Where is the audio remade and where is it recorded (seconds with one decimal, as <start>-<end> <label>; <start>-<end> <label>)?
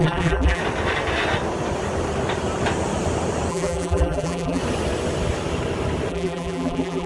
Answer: 0.0-0.6 remade; 0.6-3.5 recorded; 3.5-4.6 remade; 4.6-6.1 recorded; 6.1-7.1 remade